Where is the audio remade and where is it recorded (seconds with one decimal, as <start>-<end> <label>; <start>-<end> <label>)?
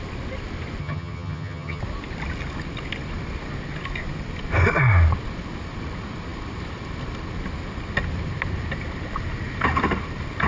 0.0-0.8 recorded; 0.8-1.8 remade; 1.8-10.5 recorded